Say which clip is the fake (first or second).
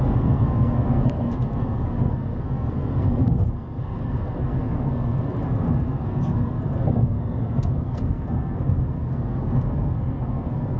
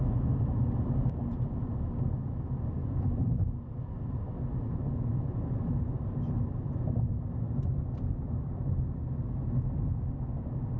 first